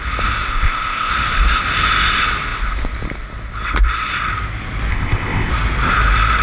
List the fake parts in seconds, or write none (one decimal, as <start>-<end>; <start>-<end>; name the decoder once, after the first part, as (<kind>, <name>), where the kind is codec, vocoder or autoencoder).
0.5-1.1 (codec, ZipCodec); 4.9-5.5